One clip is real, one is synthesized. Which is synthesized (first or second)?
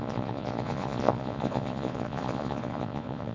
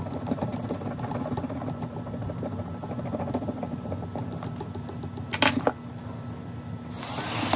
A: first